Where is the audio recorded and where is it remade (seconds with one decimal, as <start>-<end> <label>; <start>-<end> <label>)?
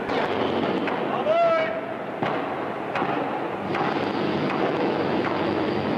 0.0-4.7 recorded; 4.7-6.0 remade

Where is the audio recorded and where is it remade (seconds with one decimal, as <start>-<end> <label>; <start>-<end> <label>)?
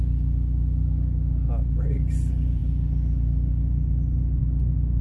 0.0-5.0 recorded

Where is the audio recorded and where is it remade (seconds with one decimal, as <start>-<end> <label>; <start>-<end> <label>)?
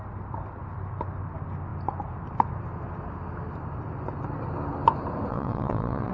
0.0-5.3 recorded; 5.3-6.1 remade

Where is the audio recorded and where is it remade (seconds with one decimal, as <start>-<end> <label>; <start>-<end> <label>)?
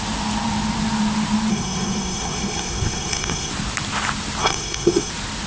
0.0-1.5 recorded; 1.5-3.5 remade; 3.5-4.4 recorded; 4.4-5.1 remade; 5.1-5.5 recorded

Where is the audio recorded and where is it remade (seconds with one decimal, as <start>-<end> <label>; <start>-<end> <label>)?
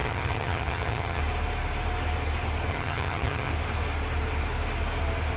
0.0-1.2 remade; 1.2-2.7 recorded; 2.7-3.5 remade; 3.5-5.4 recorded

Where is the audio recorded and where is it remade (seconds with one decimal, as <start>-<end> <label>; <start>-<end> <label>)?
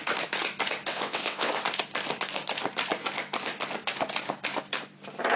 0.0-0.9 recorded; 0.9-1.5 remade; 1.5-5.4 recorded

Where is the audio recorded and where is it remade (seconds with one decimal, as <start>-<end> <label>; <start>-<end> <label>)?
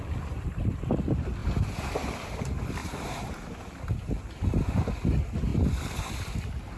0.0-1.4 recorded; 1.4-2.3 remade; 2.3-2.8 recorded; 2.8-3.8 remade; 3.8-6.8 recorded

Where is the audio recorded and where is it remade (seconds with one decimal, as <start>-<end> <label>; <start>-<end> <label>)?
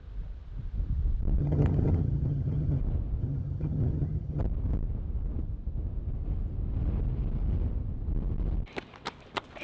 0.0-1.4 recorded; 1.4-2.8 remade; 2.8-3.2 recorded; 3.2-4.4 remade; 4.4-9.6 recorded